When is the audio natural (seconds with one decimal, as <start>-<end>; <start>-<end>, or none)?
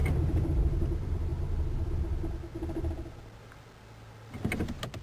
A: 0.5-5.0